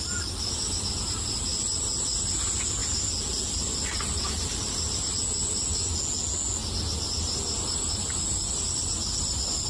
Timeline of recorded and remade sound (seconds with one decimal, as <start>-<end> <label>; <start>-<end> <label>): 0.0-9.7 recorded